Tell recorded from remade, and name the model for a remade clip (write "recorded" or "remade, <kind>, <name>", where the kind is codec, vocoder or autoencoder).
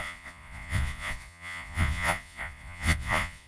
remade, vocoder, Vocos